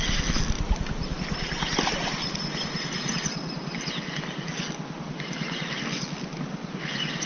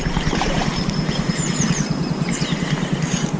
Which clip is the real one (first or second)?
first